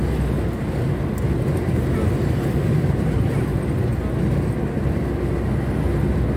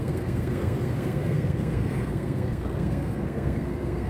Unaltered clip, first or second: first